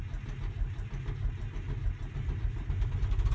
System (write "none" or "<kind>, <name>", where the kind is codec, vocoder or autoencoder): none